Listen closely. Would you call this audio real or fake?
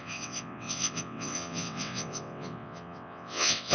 fake